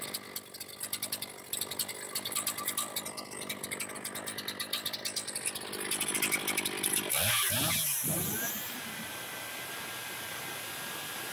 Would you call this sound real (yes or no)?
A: yes